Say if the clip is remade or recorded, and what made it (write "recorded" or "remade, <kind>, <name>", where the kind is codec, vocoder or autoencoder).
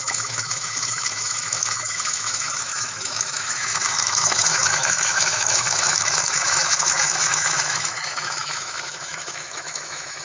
remade, autoencoder, DAC-VAE